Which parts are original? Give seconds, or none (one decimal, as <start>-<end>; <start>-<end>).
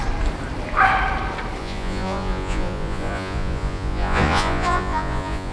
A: 0.0-1.6